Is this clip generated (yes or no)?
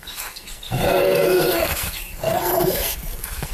yes